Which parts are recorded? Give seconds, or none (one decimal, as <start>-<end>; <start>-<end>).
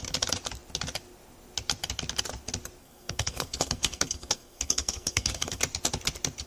0.0-2.8; 5.6-6.5